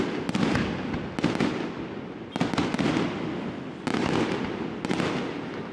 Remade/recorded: recorded